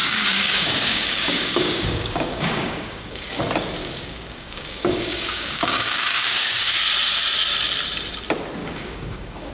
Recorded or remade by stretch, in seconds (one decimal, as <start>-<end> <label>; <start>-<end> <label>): 0.0-3.4 remade; 3.4-3.8 recorded; 3.8-6.7 remade; 6.7-8.6 recorded; 8.6-9.5 remade